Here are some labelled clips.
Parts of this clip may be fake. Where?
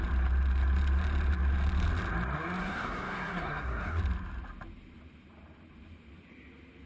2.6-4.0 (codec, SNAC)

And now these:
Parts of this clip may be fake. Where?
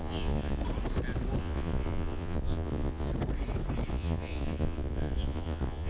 0.0-0.6 (vocoder, Vocos); 1.4-3.1; 3.9-5.9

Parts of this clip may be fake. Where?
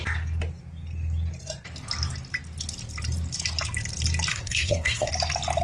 4.3-5.1 (codec, SNAC)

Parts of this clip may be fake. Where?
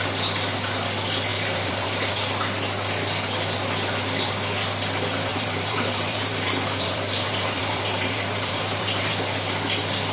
1.3-2.1 (vocoder, BigVGAN v2); 5.3-9.1